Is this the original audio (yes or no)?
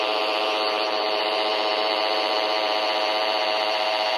no